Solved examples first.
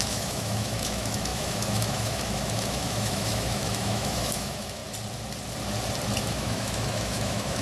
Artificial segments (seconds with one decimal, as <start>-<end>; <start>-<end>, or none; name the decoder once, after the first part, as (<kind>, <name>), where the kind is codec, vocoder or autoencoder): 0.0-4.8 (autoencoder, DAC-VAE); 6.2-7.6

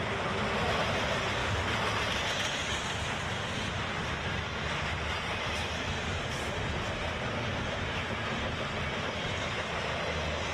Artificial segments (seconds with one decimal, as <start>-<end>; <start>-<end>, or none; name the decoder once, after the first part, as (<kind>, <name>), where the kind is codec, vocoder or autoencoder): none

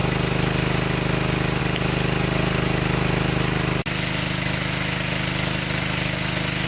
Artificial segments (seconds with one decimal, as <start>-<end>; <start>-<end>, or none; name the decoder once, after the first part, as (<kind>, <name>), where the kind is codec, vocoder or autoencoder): none

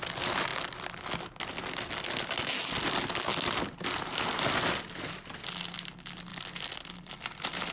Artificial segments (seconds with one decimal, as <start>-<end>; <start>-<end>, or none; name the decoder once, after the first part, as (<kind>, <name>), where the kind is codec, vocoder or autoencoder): none

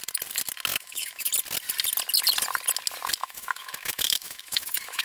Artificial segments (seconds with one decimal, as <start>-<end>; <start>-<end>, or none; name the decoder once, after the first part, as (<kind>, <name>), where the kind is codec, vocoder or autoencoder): 0.7-1.3 (autoencoder, DAC-VAE); 3.2-5.0

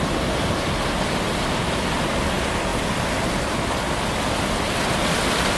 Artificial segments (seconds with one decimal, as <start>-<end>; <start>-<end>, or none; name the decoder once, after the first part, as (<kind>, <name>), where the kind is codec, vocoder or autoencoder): none

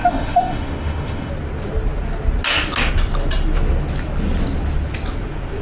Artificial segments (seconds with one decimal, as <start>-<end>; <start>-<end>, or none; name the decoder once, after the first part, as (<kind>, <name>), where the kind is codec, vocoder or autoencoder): 0.0-1.3 (autoencoder, DAC-VAE)

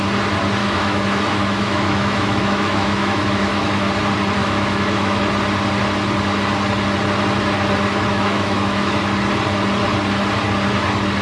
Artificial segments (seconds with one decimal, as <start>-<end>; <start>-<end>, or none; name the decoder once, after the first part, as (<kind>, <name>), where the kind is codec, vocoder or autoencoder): 0.6-3.9 (autoencoder, DAC-VAE); 4.4-5.2; 8.1-9.0